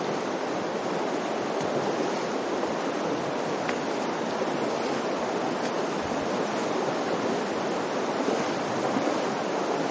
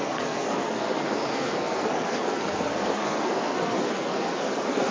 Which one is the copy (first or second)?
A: second